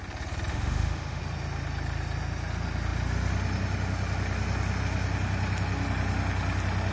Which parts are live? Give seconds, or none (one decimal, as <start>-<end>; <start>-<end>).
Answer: 0.0-0.5; 1.2-6.9